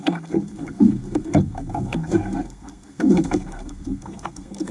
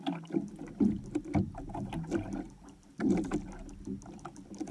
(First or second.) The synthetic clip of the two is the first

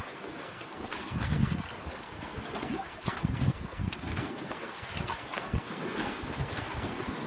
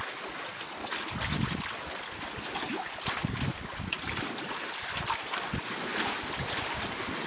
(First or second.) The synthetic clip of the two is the first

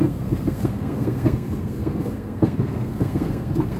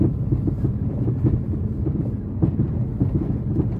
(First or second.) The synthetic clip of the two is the first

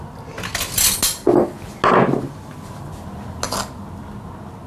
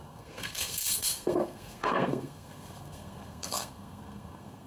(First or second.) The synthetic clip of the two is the second